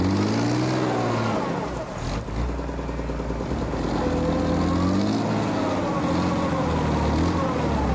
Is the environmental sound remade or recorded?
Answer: recorded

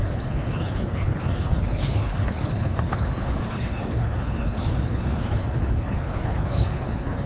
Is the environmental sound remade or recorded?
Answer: remade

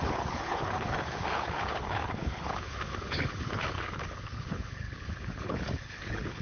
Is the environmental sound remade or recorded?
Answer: remade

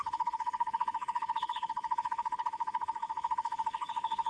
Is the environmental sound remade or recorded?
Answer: remade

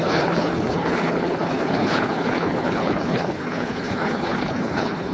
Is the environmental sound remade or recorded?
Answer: remade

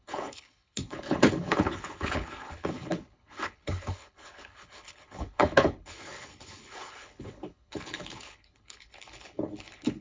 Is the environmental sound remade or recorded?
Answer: remade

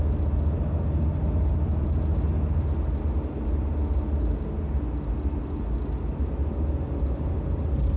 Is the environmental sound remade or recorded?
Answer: recorded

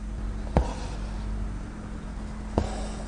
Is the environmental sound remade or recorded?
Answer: recorded